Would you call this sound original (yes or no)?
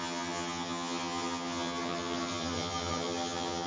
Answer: no